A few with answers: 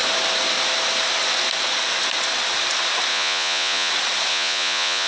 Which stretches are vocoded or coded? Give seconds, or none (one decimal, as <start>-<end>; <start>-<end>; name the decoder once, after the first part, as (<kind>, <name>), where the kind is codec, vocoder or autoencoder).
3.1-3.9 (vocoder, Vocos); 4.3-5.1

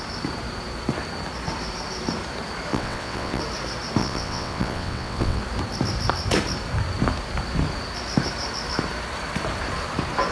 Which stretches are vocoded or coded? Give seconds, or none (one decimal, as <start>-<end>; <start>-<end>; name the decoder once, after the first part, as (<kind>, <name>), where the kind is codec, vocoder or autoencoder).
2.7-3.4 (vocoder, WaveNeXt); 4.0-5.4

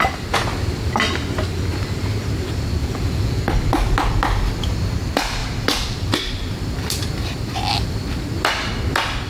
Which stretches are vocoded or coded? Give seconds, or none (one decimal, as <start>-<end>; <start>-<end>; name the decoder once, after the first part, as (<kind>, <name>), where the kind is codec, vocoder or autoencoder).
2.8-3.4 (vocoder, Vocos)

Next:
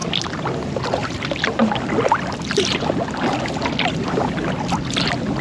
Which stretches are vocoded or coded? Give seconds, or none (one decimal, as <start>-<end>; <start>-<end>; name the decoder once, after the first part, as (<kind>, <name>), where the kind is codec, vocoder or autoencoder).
none

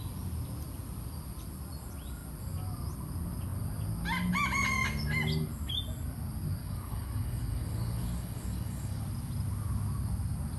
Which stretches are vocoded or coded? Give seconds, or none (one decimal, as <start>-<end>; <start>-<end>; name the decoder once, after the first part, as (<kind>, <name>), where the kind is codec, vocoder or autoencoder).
6.6-9.0 (codec, DAC)

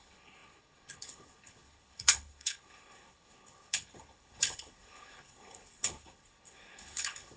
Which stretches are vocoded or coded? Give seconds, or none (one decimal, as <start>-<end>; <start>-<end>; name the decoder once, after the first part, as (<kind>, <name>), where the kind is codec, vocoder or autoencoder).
0.0-7.4 (codec, HILCodec)

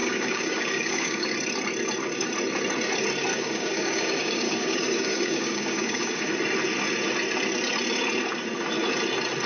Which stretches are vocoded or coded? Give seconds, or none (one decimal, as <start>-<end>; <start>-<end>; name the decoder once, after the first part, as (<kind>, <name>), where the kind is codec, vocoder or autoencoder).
0.0-1.3 (codec, DAC); 3.3-6.3